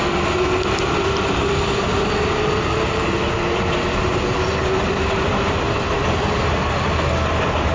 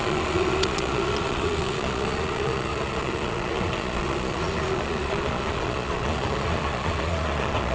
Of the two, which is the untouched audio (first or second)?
first